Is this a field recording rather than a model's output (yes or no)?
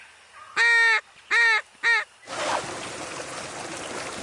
yes